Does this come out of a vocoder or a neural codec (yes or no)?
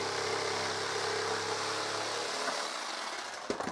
no